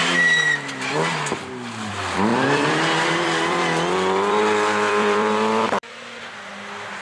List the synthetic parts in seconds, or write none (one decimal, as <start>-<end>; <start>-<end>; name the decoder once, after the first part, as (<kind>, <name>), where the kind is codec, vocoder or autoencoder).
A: 2.3-6.5 (vocoder, BigVGAN v2)